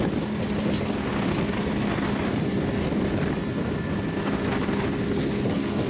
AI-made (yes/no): no